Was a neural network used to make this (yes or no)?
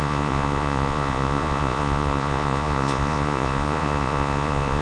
yes